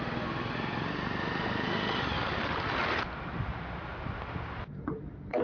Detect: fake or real real